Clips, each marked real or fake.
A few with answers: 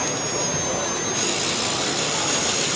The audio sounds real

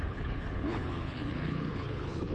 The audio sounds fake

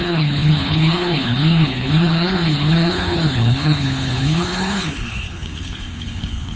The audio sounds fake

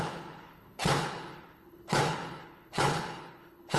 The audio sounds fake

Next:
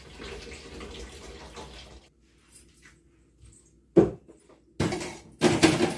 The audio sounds real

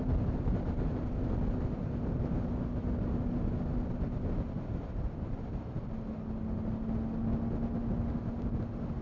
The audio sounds real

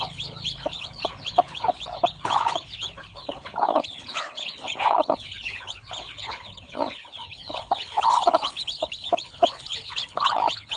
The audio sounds fake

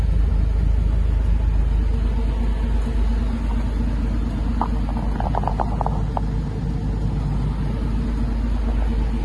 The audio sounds real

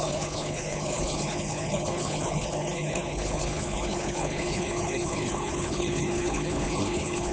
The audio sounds fake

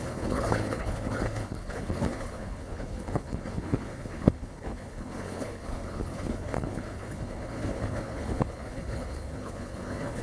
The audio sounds fake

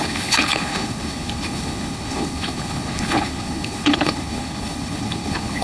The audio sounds fake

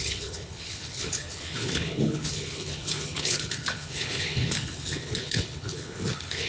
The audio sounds fake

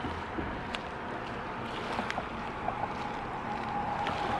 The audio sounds real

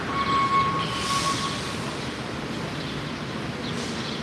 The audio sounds real